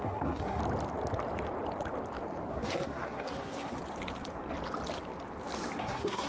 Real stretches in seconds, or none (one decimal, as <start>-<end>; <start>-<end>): 0.6-2.5; 3.8-5.8